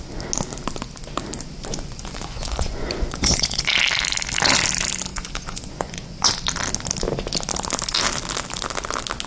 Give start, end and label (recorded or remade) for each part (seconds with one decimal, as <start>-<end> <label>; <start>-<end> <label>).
0.0-1.7 recorded; 1.7-3.7 remade; 3.7-5.1 recorded; 5.1-6.3 remade; 6.3-9.3 recorded